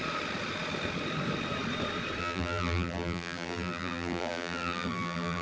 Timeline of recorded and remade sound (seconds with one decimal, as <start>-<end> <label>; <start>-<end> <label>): 0.0-2.2 recorded; 2.2-5.4 remade